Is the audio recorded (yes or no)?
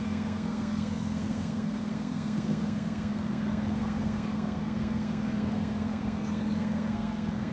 no